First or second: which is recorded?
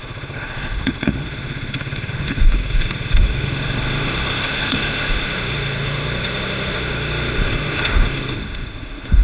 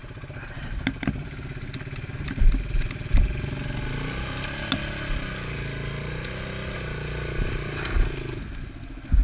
second